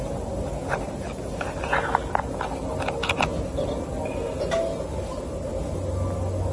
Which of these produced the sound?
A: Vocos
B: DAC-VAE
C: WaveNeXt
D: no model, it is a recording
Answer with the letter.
D